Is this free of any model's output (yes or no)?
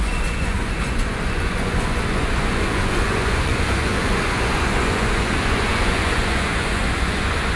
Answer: no